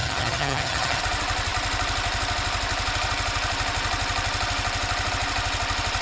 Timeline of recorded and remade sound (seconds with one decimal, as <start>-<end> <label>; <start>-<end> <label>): 0.0-1.0 remade; 1.0-6.0 recorded